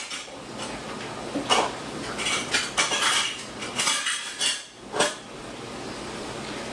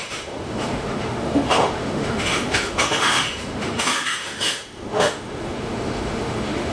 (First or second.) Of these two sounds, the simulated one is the second